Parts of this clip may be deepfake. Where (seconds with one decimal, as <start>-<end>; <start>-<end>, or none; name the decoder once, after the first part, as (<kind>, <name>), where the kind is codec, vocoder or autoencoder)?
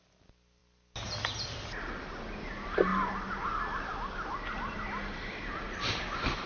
none